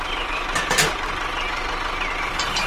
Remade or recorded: remade